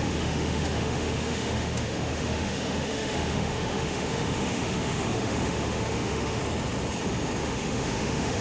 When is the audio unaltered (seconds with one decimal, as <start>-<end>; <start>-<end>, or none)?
6.4-7.4